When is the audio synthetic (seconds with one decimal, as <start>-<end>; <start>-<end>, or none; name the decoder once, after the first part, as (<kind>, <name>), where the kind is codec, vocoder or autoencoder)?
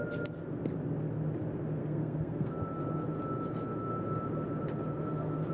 1.8-2.5 (codec, SNAC); 5.0-5.5